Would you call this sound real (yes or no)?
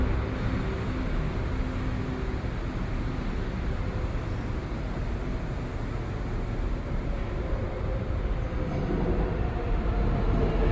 yes